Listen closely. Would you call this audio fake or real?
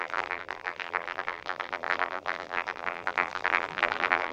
fake